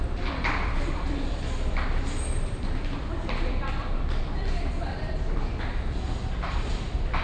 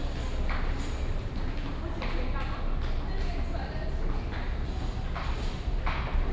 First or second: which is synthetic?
first